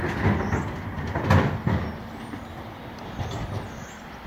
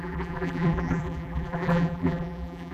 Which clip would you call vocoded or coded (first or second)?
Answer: second